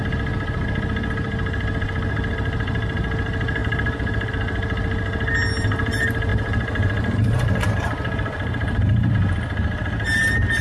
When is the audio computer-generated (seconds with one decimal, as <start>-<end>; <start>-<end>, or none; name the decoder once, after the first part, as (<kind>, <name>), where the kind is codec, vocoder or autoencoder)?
3.6-4.3 (vocoder, BigVGAN v2); 6.3-9.1